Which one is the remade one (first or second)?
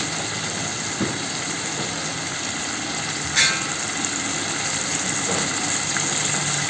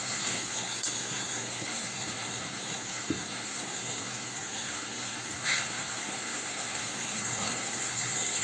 second